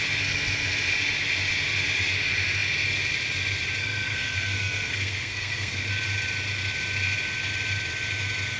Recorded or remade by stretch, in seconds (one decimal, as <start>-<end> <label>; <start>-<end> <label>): 0.0-3.8 recorded; 3.8-5.9 remade; 5.9-8.6 recorded